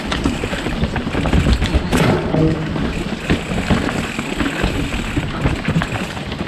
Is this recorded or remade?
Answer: recorded